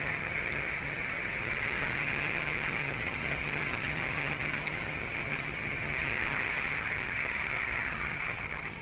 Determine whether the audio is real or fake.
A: fake